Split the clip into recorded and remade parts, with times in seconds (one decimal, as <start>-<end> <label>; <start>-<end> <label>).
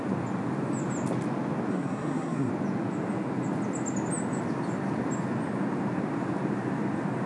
0.0-1.7 recorded; 1.7-2.5 remade; 2.5-7.3 recorded